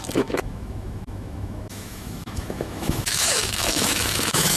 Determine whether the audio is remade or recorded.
remade